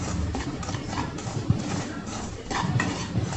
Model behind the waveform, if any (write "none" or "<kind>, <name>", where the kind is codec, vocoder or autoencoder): vocoder, BigVGAN v2